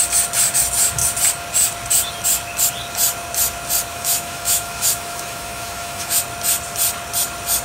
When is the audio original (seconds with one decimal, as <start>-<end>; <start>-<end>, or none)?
0.0-3.9; 6.2-7.6